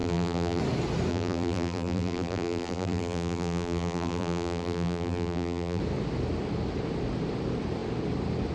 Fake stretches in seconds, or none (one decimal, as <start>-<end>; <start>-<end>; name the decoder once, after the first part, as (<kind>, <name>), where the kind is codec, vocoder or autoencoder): 0.0-0.6 (vocoder, BigVGAN v2); 1.1-5.8